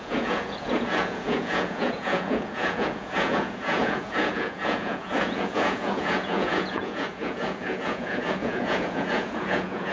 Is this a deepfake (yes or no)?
yes